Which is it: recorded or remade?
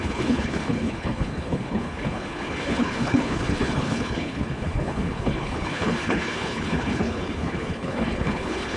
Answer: remade